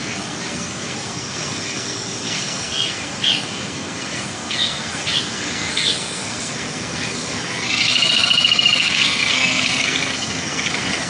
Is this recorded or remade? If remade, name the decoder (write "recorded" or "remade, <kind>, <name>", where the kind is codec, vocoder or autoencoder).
remade, codec, SNAC